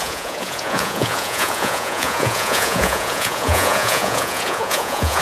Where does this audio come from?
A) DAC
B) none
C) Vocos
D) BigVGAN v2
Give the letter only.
C